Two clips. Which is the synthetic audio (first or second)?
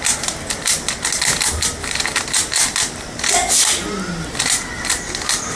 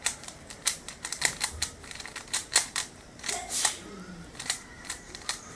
second